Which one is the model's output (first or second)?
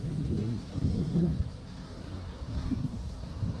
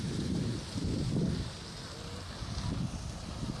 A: first